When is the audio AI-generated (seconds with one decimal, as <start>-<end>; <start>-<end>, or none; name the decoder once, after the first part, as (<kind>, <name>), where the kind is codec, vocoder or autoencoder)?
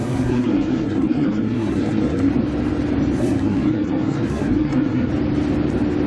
0.0-2.3 (codec, SNAC); 3.2-5.1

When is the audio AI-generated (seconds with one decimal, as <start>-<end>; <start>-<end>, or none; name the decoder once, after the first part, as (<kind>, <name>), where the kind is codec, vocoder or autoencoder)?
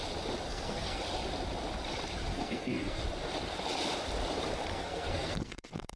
0.5-1.0 (codec, SNAC); 2.3-3.0; 4.7-6.0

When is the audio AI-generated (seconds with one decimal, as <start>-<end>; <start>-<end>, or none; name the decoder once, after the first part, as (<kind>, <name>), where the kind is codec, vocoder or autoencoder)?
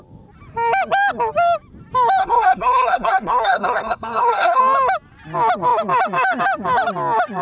2.2-4.6 (codec, SNAC)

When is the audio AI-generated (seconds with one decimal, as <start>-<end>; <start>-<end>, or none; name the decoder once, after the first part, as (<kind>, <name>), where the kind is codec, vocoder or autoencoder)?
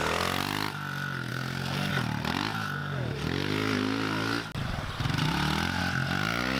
1.3-1.9 (codec, SNAC)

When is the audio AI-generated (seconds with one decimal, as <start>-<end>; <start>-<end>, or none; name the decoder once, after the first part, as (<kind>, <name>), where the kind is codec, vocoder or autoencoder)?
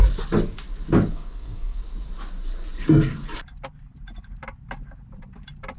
1.1-1.8 (codec, SNAC)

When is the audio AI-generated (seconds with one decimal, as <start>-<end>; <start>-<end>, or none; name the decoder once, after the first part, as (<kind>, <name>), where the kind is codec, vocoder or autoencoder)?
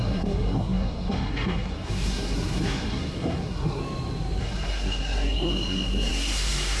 0.0-3.8 (codec, SNAC); 4.4-6.8